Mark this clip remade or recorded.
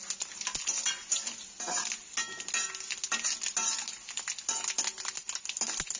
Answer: recorded